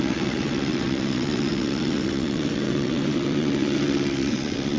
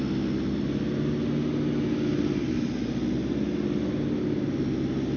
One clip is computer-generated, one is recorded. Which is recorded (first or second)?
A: second